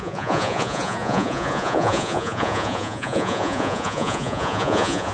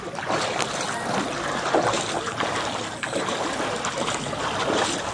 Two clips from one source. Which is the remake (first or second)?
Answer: first